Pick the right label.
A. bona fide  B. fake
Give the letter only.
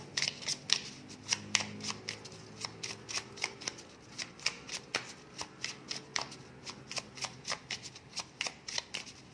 A